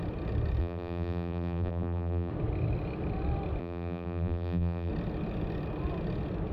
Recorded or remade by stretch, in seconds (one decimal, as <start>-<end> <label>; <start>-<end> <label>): 0.0-0.6 recorded; 0.6-2.3 remade; 2.3-3.6 recorded; 3.6-4.9 remade; 4.9-6.5 recorded

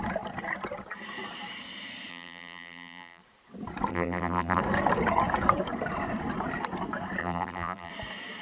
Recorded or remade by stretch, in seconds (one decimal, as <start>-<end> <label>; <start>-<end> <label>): 0.0-2.1 recorded; 2.1-3.2 remade; 3.2-3.9 recorded; 3.9-4.6 remade; 4.6-7.2 recorded; 7.2-7.9 remade; 7.9-8.4 recorded

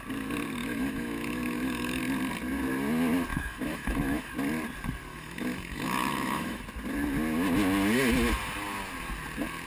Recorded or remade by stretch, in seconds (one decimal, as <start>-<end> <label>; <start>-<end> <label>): 0.0-0.6 recorded; 0.6-2.0 remade; 2.0-3.3 recorded; 3.3-4.3 remade; 4.3-5.1 recorded; 5.1-6.6 remade; 6.6-9.7 recorded

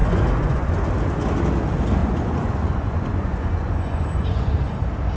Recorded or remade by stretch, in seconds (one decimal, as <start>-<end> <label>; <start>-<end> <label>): 0.0-0.7 remade; 0.7-2.0 recorded; 2.0-4.5 remade; 4.5-5.2 recorded

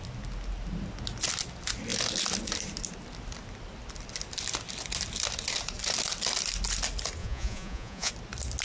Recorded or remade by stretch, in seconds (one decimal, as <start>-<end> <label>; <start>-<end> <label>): 0.0-7.2 recorded; 7.2-8.1 remade; 8.1-8.6 recorded

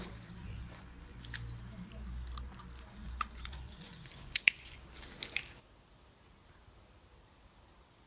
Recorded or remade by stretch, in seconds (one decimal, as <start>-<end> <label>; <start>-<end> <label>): 0.0-0.4 recorded; 0.4-1.2 remade; 1.2-3.0 recorded; 3.0-4.8 remade; 4.8-8.1 recorded